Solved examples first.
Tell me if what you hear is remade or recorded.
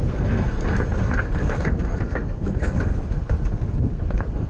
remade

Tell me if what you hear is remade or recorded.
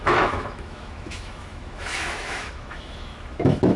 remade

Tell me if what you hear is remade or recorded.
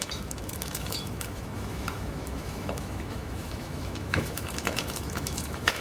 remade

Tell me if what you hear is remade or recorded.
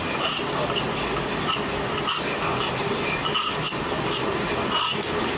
recorded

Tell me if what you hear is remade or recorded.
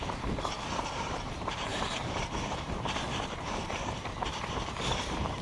remade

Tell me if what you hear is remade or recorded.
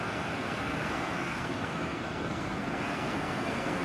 remade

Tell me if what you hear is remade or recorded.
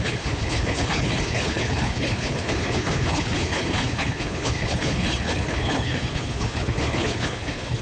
remade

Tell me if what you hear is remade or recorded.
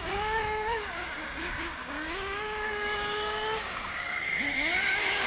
remade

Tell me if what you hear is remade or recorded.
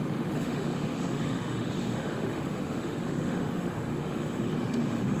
remade